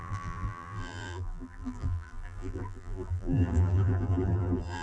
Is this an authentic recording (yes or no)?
no